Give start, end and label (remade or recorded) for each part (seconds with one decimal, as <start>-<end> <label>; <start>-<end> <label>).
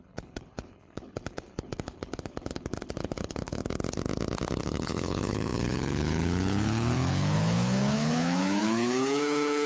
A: 0.0-3.6 remade; 3.6-4.6 recorded; 4.6-9.7 remade